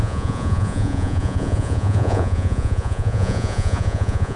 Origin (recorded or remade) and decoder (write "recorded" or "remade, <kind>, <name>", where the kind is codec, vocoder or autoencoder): remade, vocoder, Vocos